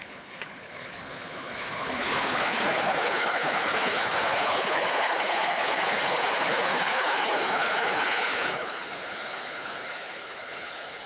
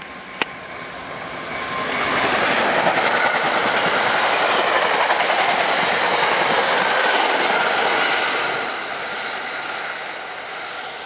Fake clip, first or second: first